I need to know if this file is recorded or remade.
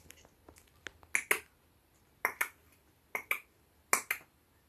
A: recorded